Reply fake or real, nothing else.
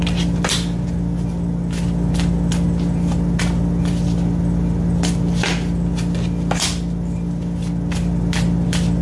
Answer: real